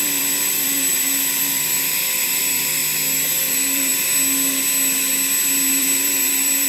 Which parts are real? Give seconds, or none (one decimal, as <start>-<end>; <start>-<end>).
2.8-3.3; 3.9-5.8